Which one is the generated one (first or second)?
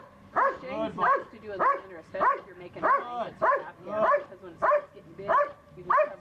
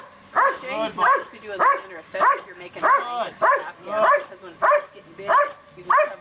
first